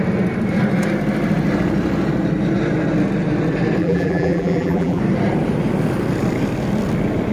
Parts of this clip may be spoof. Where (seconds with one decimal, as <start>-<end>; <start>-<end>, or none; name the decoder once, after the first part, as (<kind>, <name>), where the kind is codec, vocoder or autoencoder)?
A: 3.8-5.0 (vocoder, BigVGAN v2)